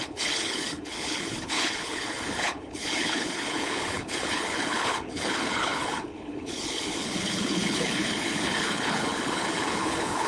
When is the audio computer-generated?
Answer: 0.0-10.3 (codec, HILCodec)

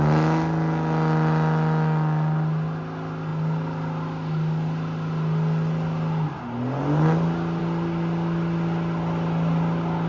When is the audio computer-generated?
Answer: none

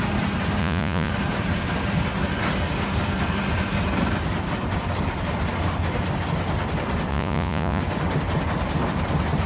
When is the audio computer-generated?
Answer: 0.6-1.1 (vocoder, Vocos); 7.1-7.8